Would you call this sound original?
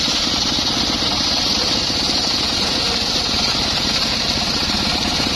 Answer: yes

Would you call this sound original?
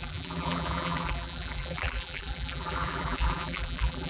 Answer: no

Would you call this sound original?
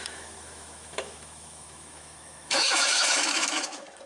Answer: no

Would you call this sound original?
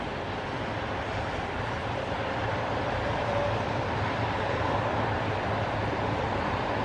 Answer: no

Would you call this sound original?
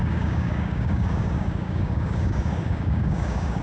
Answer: no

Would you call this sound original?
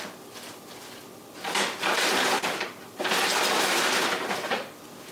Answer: no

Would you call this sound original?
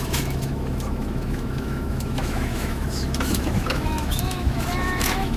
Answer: no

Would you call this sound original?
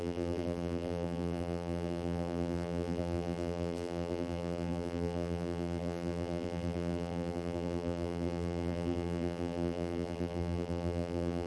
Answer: no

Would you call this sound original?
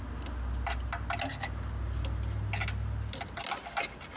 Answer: yes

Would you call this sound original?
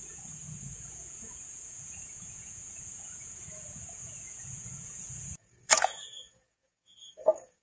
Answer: no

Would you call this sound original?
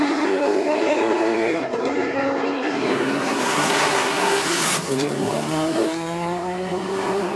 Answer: no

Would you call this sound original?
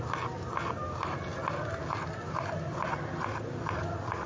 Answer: yes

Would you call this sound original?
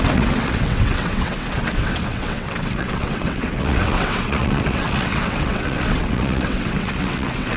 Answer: no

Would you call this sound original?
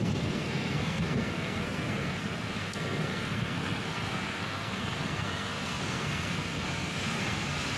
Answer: no